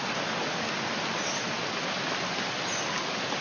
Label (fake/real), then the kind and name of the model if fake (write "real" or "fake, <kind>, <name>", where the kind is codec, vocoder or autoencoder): real